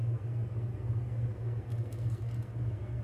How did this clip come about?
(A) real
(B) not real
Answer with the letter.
B